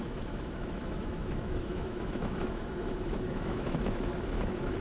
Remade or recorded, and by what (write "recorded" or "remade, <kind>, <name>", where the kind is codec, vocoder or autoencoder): remade, autoencoder, DAC-VAE